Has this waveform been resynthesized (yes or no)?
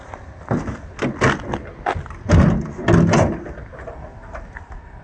no